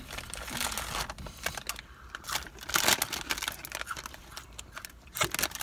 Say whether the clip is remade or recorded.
recorded